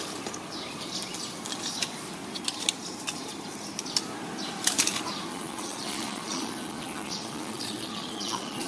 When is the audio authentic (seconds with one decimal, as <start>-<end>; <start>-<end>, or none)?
0.0-5.3